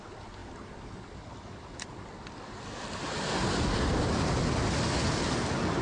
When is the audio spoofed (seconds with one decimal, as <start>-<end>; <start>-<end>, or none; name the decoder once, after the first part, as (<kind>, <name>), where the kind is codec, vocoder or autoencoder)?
none